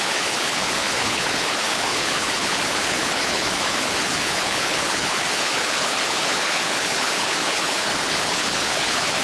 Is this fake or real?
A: fake